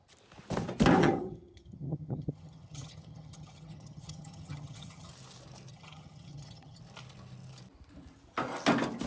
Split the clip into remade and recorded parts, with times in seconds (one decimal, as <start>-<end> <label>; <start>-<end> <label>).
0.0-1.0 recorded; 1.0-5.1 remade; 5.1-5.7 recorded; 5.7-6.8 remade; 6.8-9.1 recorded